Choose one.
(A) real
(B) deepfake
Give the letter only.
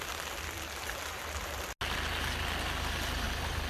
A